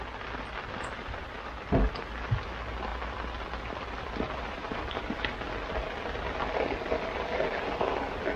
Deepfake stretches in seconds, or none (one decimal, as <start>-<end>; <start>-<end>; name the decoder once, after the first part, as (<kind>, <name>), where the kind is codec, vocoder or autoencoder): none